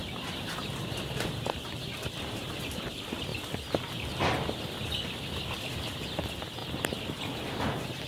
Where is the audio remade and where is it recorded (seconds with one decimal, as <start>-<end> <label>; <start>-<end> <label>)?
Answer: 0.0-3.3 recorded; 3.3-4.7 remade; 4.7-8.1 recorded